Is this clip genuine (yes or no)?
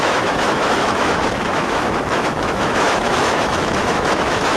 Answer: no